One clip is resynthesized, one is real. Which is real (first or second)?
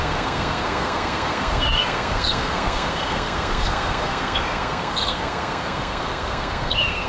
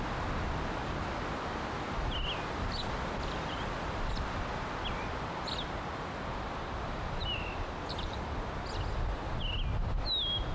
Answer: second